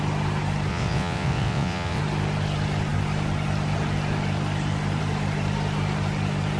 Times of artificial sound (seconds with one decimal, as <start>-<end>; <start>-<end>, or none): 0.7-2.0